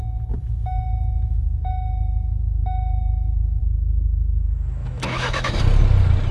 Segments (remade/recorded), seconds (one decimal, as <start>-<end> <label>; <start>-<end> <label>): 0.0-0.4 recorded; 0.4-3.6 remade; 3.6-4.8 recorded; 4.8-5.6 remade; 5.6-6.3 recorded